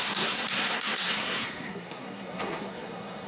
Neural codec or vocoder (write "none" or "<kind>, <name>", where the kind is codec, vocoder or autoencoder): codec, SNAC